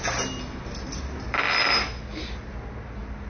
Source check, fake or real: real